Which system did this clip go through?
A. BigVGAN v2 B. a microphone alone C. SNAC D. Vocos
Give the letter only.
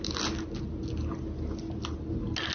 B